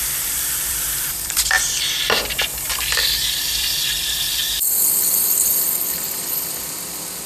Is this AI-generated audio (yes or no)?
yes